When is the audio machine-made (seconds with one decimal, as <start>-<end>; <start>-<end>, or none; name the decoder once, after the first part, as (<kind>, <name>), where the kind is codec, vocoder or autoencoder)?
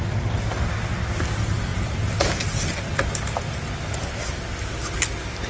none